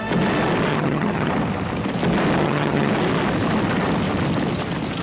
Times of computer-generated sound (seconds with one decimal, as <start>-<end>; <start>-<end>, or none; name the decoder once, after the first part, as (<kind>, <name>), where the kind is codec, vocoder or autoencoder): 0.7-1.3 (vocoder, HiFi-GAN); 2.4-2.9